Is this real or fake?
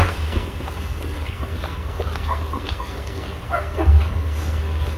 fake